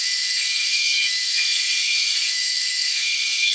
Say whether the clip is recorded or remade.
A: remade